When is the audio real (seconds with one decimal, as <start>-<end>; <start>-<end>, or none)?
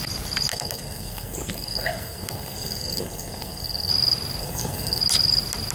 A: 0.0-0.5; 3.9-4.4; 5.0-5.7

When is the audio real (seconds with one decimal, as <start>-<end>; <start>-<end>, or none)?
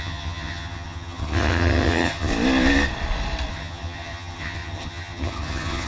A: 2.3-3.5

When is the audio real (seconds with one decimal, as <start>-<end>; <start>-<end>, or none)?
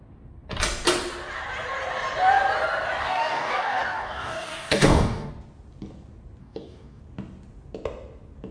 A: 0.0-3.0; 5.3-6.4; 7.0-8.5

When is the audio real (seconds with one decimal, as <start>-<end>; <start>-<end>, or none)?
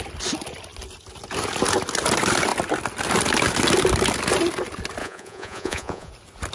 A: 0.0-5.0; 6.1-6.5